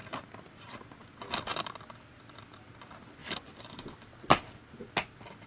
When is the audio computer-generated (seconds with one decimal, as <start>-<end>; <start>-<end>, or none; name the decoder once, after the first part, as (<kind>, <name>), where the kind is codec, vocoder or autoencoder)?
1.5-2.4 (vocoder, BigVGAN v2); 3.2-4.6